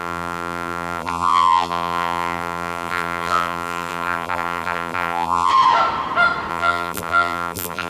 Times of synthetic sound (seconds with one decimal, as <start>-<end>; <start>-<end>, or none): 0.0-5.5; 6.5-7.9